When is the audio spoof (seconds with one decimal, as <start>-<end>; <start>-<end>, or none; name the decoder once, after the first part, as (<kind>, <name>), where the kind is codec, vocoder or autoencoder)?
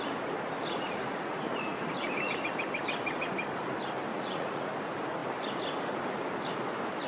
0.7-1.8 (vocoder, Vocos); 4.1-4.7